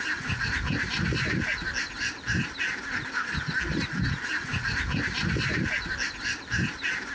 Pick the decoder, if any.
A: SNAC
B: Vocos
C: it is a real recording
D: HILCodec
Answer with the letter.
C